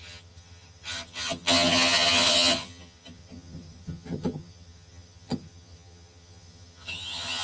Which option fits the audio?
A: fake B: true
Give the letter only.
A